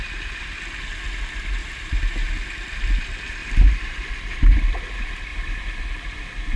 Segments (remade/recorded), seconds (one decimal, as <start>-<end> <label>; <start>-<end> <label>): 0.0-1.6 recorded; 1.6-2.3 remade; 2.3-3.4 recorded; 3.4-4.1 remade; 4.1-5.3 recorded; 5.3-5.8 remade; 5.8-6.6 recorded